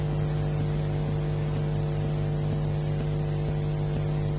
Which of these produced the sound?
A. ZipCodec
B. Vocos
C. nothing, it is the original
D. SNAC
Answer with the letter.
C